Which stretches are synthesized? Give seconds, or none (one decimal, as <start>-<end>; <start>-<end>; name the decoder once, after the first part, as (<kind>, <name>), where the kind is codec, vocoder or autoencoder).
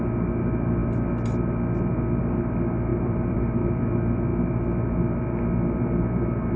2.9-3.4 (vocoder, BigVGAN v2)